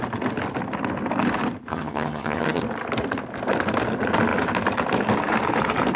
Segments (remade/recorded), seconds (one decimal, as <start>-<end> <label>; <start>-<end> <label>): 0.0-1.7 recorded; 1.7-2.6 remade; 2.6-6.0 recorded